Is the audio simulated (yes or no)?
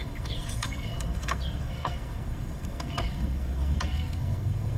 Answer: yes